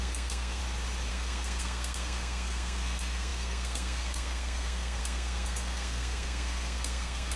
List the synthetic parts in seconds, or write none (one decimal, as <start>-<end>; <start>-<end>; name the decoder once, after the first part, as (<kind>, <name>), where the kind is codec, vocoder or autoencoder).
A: 0.0-0.6 (codec, SNAC); 1.1-7.4